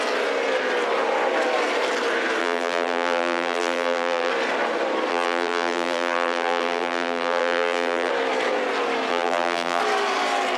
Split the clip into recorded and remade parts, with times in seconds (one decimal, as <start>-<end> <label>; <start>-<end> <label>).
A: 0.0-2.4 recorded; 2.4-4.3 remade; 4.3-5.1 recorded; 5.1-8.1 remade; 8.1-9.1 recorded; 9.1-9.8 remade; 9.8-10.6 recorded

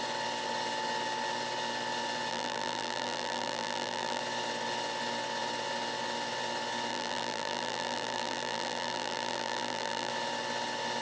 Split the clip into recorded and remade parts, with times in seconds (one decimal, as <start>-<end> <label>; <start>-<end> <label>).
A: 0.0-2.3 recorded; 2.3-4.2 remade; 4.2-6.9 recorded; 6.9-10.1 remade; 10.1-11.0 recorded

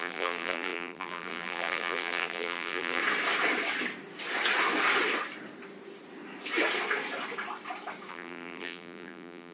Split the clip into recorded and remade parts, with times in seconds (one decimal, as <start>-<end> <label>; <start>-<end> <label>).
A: 0.0-3.0 remade; 3.0-8.1 recorded; 8.1-9.5 remade

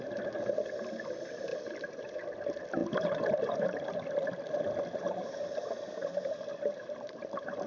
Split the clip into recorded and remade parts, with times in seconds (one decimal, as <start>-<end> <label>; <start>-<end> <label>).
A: 0.0-2.8 recorded; 2.8-4.3 remade; 4.3-6.0 recorded; 6.0-7.7 remade

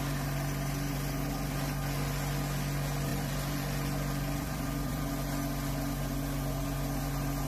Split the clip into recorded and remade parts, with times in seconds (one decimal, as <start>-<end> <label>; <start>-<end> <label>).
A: 0.0-3.1 recorded; 3.1-5.1 remade; 5.1-7.5 recorded

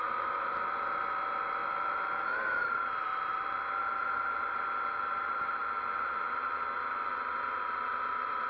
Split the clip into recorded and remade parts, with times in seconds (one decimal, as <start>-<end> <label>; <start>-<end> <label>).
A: 0.0-8.5 remade

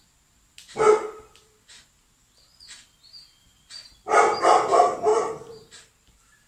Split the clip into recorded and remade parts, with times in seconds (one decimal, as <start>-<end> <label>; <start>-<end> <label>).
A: 0.0-5.1 recorded; 5.1-6.5 remade